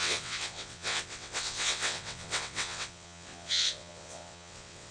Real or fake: fake